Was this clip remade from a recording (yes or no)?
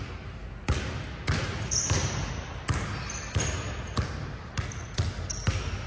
no